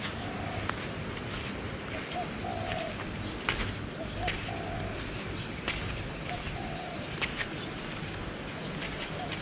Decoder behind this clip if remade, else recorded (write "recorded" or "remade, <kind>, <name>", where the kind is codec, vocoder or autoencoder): recorded